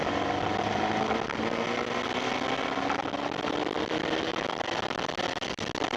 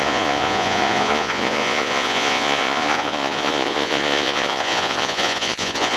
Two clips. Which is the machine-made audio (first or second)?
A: second